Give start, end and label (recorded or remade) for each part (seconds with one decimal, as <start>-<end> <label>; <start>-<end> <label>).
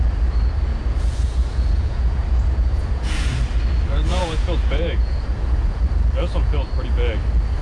0.0-0.7 recorded; 0.7-3.3 remade; 3.3-4.1 recorded; 4.1-5.8 remade; 5.8-7.6 recorded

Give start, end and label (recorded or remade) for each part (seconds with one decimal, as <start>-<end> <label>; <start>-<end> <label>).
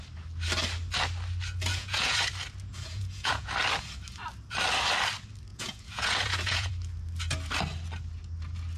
0.0-1.7 recorded; 1.7-2.3 remade; 2.3-2.7 recorded; 2.7-3.5 remade; 3.5-5.5 recorded; 5.5-6.7 remade; 6.7-8.8 recorded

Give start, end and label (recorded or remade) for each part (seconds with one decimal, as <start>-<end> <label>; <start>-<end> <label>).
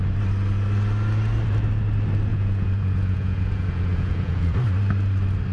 0.0-2.3 recorded; 2.3-4.6 remade; 4.6-5.5 recorded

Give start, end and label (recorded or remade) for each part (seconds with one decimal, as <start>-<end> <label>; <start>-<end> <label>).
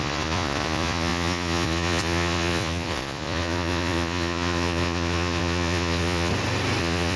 0.0-6.3 remade; 6.3-6.8 recorded; 6.8-7.2 remade